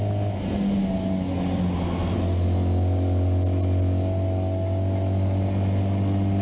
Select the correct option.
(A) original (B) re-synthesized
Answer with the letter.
A